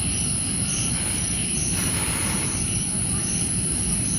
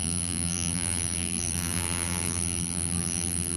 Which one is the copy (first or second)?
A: second